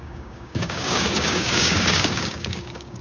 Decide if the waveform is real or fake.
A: fake